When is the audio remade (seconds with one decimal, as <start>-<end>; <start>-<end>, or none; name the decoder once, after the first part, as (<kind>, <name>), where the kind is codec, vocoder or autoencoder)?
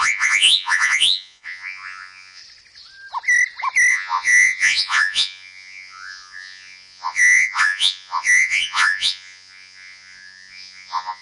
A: 0.0-2.4 (vocoder, Vocos); 3.9-11.2